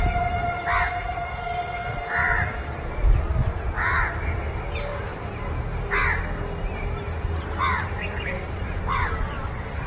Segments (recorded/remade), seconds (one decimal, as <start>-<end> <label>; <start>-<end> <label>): 0.0-2.2 recorded; 2.2-4.5 remade; 4.5-7.7 recorded; 7.7-9.2 remade; 9.2-9.9 recorded